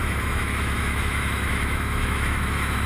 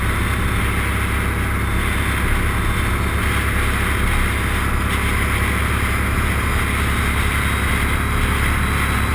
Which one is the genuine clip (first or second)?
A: second